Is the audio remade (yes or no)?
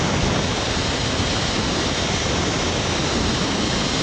no